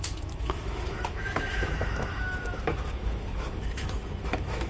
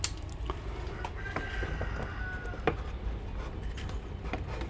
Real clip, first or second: second